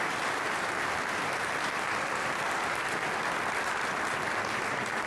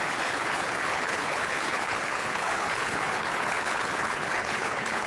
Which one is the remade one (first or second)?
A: second